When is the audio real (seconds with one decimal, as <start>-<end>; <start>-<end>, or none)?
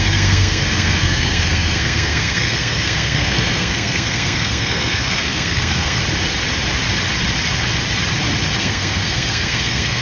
6.0-8.6